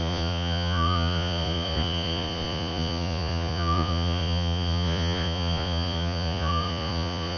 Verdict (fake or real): fake